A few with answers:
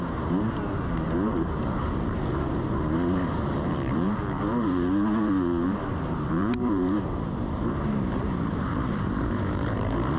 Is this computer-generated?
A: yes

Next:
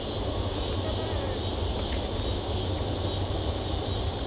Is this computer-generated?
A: no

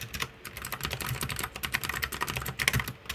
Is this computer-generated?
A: no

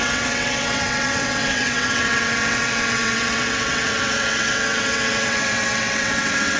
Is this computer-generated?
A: yes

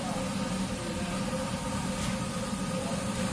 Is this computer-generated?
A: no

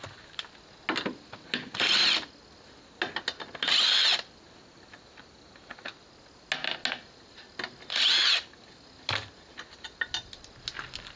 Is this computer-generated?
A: no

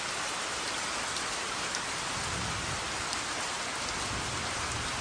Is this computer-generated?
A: no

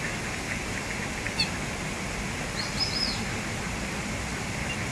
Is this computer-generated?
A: no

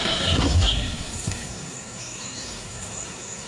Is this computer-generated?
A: yes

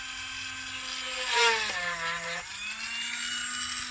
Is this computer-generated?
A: no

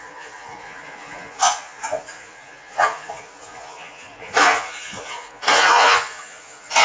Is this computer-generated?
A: yes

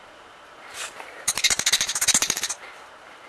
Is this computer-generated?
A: yes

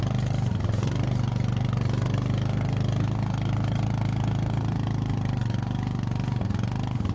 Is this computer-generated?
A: no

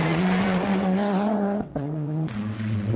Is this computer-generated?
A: yes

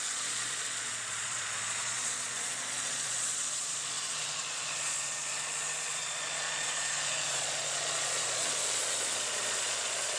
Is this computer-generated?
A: yes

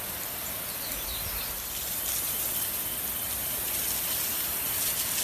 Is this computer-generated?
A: no